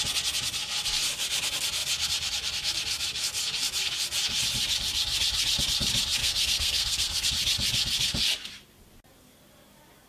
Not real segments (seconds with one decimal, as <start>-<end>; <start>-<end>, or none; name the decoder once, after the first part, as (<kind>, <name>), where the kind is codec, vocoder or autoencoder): 6.2-7.3 (codec, SNAC)